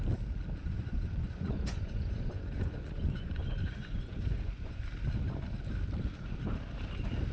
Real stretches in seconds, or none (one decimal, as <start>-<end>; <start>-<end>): 0.0-0.6; 4.8-7.3